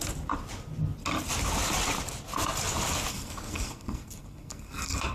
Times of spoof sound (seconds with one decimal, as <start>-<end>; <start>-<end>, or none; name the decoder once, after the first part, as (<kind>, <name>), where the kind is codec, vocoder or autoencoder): 3.1-5.1 (codec, SNAC)

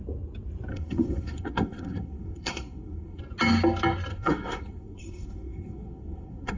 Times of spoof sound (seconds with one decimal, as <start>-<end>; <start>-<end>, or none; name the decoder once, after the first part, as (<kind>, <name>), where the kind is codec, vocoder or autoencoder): 0.7-3.2 (codec, SNAC); 4.1-6.6

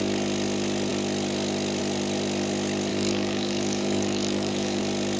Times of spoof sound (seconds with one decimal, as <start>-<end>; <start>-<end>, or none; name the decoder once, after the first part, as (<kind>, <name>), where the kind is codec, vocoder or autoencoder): 2.9-4.8 (codec, DAC)

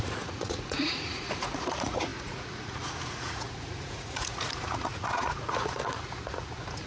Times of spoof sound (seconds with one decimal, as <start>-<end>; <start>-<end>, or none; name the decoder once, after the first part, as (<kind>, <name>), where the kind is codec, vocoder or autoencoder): 0.0-6.9 (vocoder, Vocos)